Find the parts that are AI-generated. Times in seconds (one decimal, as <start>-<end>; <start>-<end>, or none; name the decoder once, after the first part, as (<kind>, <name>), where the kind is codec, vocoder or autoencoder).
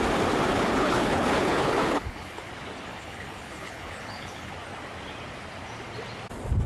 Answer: 0.5-2.5 (codec, HILCodec); 2.9-4.5